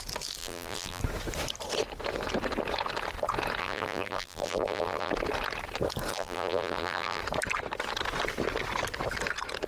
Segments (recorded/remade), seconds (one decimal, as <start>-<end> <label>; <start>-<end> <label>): 0.0-0.4 recorded; 0.4-1.0 remade; 1.0-3.6 recorded; 3.6-5.1 remade; 5.1-6.1 recorded; 6.1-7.2 remade; 7.2-9.7 recorded